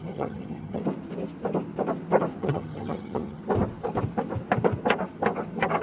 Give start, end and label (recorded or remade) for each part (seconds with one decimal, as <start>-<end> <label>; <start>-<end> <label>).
0.0-0.8 remade; 0.8-2.4 recorded; 2.4-3.4 remade; 3.4-5.8 recorded